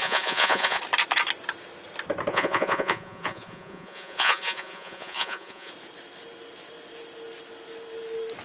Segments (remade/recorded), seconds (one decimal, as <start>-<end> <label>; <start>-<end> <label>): 0.0-0.8 remade; 0.8-2.3 recorded; 2.3-5.7 remade; 5.7-8.4 recorded